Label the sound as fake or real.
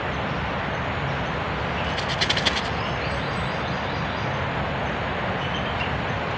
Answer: real